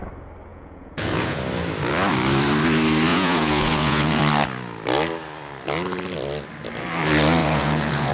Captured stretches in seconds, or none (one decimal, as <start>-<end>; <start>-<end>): 0.0-0.5; 1.4-3.1; 4.2-7.4